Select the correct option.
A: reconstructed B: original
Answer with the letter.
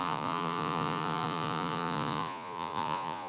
A